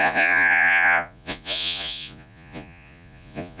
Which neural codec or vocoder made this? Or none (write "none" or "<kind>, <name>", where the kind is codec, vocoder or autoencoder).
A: vocoder, Vocos